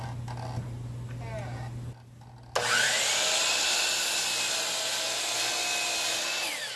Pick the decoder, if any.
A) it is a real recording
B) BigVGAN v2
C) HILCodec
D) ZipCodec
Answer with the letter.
A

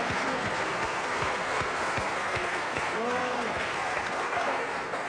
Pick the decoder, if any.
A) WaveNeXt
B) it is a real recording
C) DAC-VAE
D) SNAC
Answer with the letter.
D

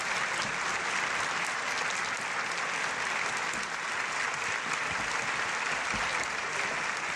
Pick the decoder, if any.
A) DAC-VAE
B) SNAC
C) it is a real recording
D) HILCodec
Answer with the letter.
C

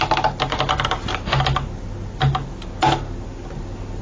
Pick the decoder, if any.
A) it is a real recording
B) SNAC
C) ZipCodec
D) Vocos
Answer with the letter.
A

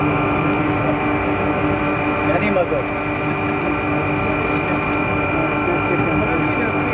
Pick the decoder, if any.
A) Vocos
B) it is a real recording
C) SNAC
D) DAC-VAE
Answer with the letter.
B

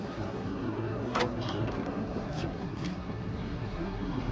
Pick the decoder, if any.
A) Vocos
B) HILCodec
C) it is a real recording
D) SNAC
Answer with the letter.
D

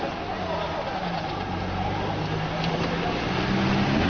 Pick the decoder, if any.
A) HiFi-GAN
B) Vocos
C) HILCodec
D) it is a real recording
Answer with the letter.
D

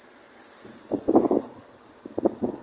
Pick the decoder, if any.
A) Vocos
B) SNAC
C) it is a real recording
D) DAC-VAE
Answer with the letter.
C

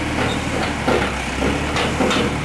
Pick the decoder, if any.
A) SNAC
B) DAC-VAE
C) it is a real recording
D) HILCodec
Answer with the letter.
C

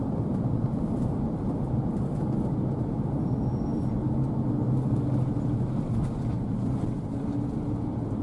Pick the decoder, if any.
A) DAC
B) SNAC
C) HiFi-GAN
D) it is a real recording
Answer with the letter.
D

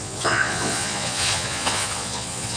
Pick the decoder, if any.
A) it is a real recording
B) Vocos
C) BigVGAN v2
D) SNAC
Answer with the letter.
B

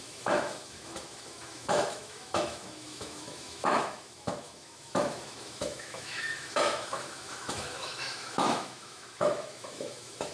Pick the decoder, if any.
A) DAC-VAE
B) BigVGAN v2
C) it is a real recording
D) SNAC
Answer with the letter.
A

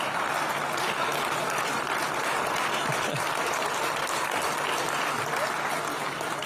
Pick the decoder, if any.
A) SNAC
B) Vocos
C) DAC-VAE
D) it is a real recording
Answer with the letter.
D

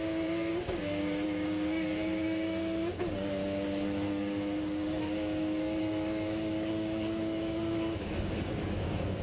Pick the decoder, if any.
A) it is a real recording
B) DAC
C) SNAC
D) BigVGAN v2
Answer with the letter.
B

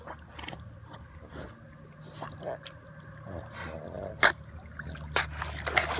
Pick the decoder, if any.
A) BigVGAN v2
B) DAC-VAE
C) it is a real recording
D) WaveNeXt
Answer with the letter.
C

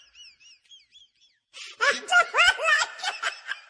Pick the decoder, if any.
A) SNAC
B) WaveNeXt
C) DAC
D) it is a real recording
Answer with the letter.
D